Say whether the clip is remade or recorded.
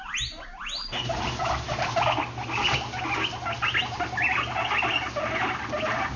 recorded